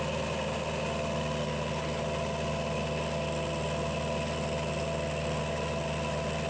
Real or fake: real